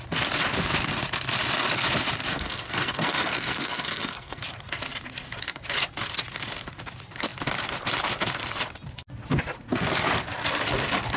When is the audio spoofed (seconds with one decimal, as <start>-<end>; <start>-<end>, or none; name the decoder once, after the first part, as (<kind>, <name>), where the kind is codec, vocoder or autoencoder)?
2.3-4.4 (codec, SNAC)